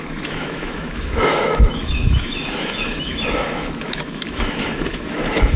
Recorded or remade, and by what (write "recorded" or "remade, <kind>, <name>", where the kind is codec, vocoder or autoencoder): remade, autoencoder, DAC-VAE